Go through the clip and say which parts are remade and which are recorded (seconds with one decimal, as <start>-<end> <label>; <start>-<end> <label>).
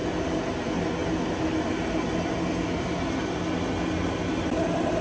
0.0-5.0 recorded